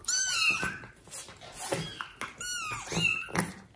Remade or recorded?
recorded